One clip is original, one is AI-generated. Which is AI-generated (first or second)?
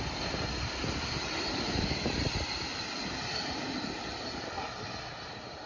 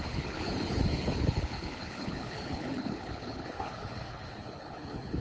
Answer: second